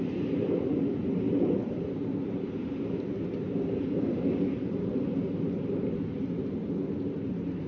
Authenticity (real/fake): fake